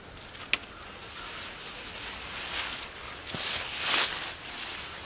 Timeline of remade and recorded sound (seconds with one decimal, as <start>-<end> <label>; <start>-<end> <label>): 0.0-3.5 recorded; 3.5-4.1 remade; 4.1-5.0 recorded